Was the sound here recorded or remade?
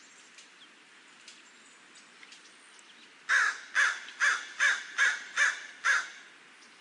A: recorded